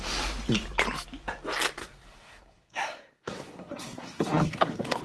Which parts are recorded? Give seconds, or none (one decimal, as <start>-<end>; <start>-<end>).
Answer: 0.0-1.8